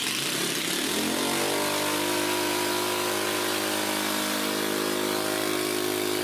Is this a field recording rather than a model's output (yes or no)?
yes